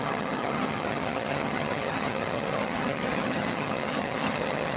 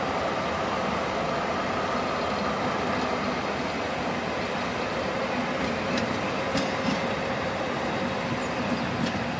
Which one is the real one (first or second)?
second